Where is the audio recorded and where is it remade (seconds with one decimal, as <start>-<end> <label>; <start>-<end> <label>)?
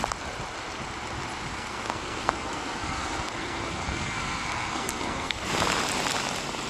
0.0-1.5 recorded; 1.5-5.5 remade; 5.5-6.7 recorded